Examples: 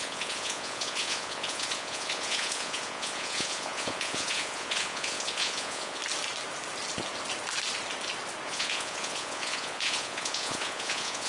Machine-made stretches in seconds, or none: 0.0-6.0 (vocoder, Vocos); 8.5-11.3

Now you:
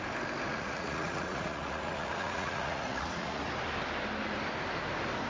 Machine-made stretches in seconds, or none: 0.5-3.4 (vocoder, Vocos)